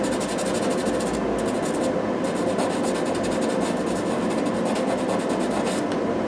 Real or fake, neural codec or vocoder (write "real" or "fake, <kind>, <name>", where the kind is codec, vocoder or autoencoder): real